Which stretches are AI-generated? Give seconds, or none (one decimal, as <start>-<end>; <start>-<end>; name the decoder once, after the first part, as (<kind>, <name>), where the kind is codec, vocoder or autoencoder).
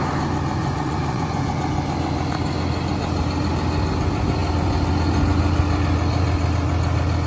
0.6-1.5 (vocoder, Vocos)